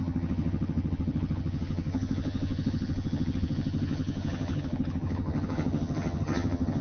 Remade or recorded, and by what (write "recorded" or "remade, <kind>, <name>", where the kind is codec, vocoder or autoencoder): remade, vocoder, HiFi-GAN